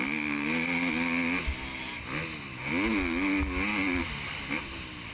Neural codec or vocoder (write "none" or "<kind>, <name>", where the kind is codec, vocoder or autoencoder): none